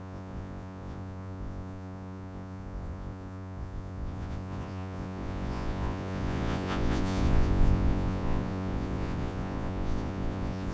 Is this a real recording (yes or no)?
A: no